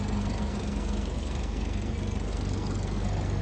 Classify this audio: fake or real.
fake